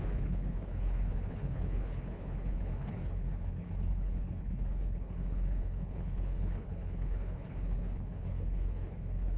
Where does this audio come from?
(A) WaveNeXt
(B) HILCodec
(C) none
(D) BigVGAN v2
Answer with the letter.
B